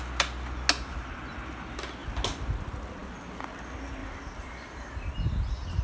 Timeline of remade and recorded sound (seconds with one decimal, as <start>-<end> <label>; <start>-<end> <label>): 0.0-4.0 recorded; 4.0-5.1 remade; 5.1-5.8 recorded